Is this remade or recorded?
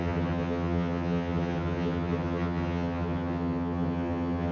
remade